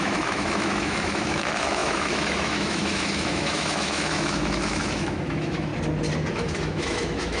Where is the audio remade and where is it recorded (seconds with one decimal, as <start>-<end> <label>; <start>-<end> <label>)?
0.0-5.7 remade; 5.7-6.3 recorded; 6.3-7.4 remade